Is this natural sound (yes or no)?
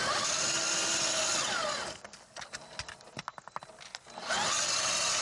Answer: yes